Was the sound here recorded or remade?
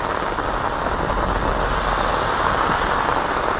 recorded